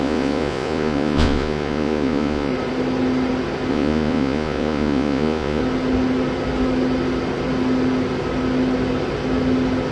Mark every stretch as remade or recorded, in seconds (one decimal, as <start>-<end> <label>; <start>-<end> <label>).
0.0-2.5 remade; 2.5-3.7 recorded; 3.7-5.6 remade; 5.6-9.9 recorded